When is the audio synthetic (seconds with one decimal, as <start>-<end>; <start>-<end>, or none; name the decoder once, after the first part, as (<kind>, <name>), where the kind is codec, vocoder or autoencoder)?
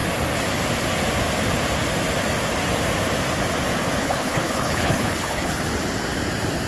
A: 4.0-5.6 (codec, HILCodec)